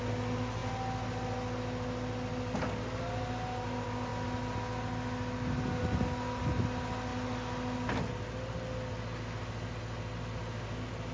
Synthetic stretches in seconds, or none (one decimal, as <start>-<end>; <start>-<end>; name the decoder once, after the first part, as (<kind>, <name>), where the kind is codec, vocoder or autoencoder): none